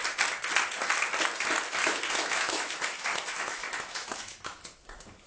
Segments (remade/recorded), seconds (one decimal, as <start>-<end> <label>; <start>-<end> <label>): 0.0-1.8 recorded; 1.8-5.3 remade